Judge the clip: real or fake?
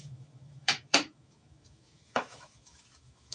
fake